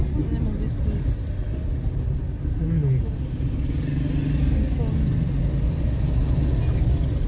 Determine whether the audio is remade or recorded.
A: recorded